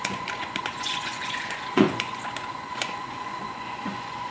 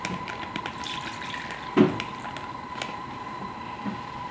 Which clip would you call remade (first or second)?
first